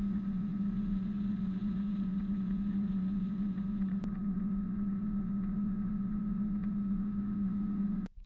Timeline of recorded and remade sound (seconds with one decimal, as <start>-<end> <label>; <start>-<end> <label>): 0.0-8.3 remade